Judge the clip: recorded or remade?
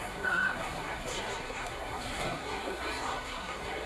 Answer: remade